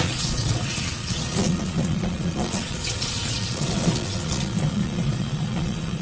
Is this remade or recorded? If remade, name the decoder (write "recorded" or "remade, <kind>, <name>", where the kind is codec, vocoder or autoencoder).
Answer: remade, vocoder, Vocos